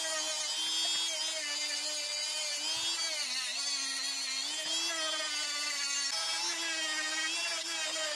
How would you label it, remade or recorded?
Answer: recorded